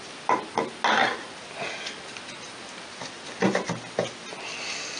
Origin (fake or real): real